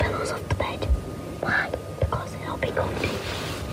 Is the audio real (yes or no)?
yes